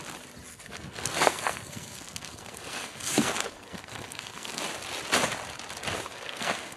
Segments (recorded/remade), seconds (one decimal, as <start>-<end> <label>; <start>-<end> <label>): 0.0-0.5 recorded; 0.5-4.6 remade; 4.6-6.1 recorded; 6.1-6.8 remade